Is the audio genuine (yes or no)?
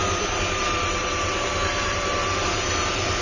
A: no